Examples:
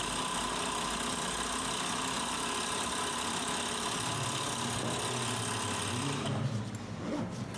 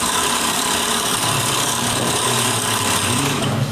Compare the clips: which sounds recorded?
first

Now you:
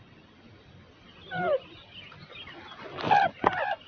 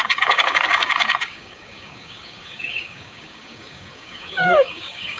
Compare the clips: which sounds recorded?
first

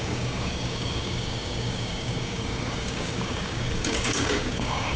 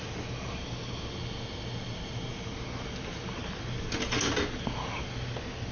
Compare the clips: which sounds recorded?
second